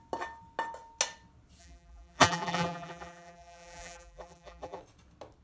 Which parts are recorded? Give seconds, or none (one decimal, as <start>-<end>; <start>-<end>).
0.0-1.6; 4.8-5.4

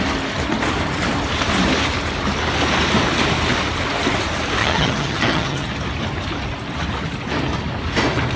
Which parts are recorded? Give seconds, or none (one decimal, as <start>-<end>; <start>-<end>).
0.0-4.6; 5.7-8.4

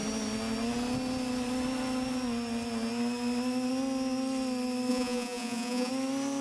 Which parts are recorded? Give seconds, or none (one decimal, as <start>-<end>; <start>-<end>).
0.0-4.9; 5.9-6.4

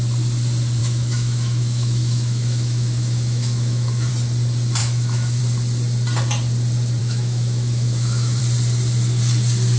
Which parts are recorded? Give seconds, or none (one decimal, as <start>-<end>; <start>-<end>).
0.0-0.8; 4.1-4.8; 5.4-7.0; 8.4-9.8